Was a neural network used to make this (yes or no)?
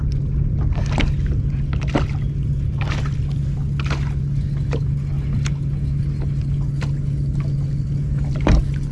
no